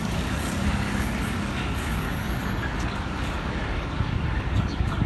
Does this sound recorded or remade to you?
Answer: remade